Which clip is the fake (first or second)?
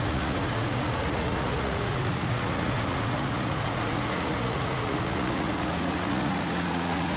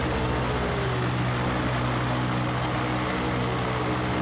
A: first